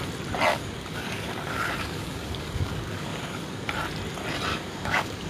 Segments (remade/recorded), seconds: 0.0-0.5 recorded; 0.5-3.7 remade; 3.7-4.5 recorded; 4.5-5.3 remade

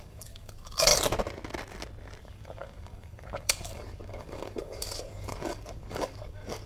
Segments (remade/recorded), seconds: 0.0-0.9 remade; 0.9-2.2 recorded; 2.2-6.7 remade